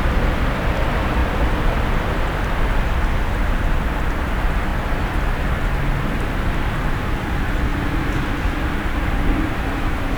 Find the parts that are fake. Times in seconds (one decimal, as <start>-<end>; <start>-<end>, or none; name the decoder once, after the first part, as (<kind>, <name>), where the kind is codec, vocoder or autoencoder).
none